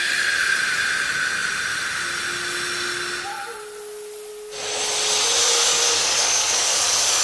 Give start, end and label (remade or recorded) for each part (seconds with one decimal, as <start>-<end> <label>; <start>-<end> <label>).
0.0-5.4 recorded; 5.4-7.2 remade